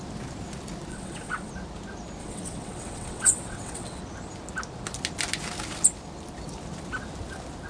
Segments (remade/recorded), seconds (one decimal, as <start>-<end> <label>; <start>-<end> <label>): 0.0-0.9 recorded; 0.9-1.5 remade; 1.5-2.2 recorded; 2.2-4.0 remade; 4.0-7.7 recorded